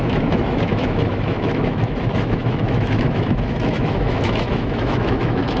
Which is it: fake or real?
fake